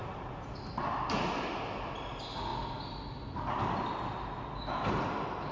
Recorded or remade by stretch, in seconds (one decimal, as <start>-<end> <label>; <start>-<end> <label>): 0.0-5.5 recorded